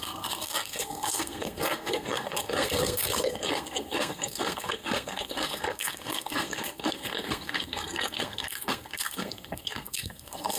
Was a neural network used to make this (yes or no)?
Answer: yes